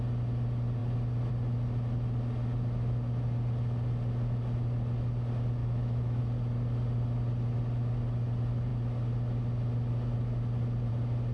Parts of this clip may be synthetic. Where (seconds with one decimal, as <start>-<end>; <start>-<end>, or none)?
5.6-6.2